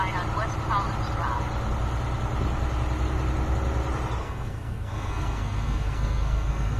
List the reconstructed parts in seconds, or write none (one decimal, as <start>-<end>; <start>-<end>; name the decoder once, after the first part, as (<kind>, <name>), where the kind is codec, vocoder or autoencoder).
4.2-6.8 (codec, SNAC)